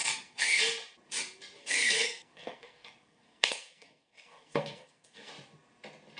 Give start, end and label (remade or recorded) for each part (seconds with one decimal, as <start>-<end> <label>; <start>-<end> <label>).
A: 0.0-0.6 remade; 0.6-1.6 recorded; 1.6-5.3 remade; 5.3-6.2 recorded